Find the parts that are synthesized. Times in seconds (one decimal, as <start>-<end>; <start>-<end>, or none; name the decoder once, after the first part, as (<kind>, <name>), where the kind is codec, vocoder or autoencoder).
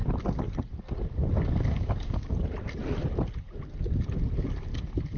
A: 1.7-2.3 (codec, DAC)